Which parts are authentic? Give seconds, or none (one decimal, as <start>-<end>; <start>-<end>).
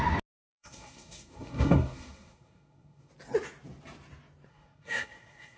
0.0-0.5; 3.1-4.5